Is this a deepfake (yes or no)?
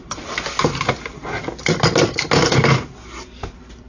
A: no